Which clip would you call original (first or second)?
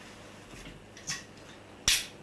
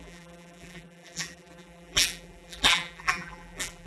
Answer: first